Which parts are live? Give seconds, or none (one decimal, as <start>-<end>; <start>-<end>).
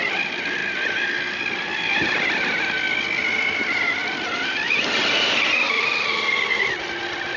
0.0-7.4